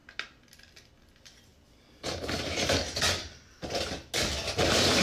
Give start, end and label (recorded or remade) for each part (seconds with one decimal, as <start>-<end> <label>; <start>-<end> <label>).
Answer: 0.0-5.0 recorded